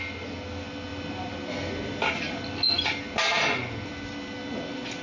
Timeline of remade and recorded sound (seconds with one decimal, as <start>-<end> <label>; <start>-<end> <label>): 0.0-5.0 recorded